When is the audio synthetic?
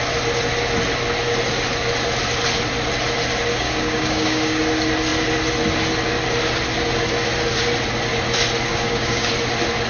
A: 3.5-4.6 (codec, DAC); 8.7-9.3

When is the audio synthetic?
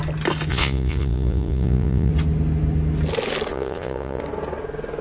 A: 0.5-2.1 (vocoder, Vocos); 3.5-4.2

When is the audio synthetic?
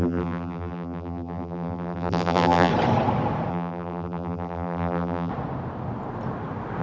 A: 0.0-2.7 (vocoder, BigVGAN v2); 3.5-5.3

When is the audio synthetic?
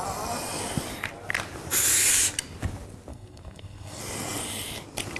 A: 3.1-4.0 (codec, SNAC)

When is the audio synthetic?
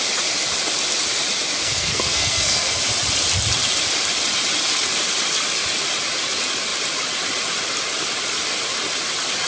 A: 1.6-2.8 (codec, SNAC)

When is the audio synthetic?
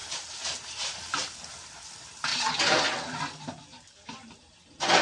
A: none